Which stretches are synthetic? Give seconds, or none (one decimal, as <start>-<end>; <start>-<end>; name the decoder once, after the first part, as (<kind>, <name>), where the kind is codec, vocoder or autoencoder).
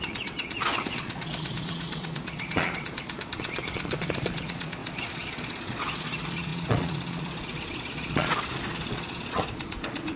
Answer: 0.0-10.2 (vocoder, Vocos)